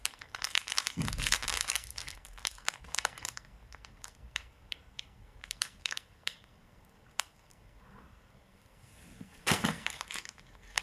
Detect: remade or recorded remade